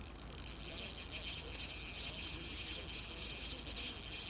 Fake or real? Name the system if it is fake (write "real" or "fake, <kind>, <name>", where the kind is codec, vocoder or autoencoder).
real